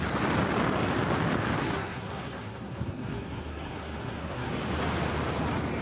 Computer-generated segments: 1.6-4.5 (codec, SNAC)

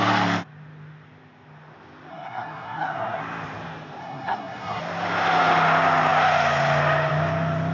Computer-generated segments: 2.1-3.2 (codec, SNAC); 4.0-4.8

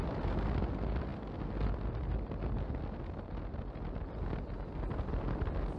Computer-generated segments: none

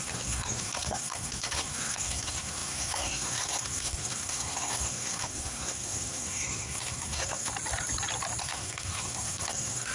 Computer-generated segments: 0.0-7.5 (codec, SNAC); 8.4-9.9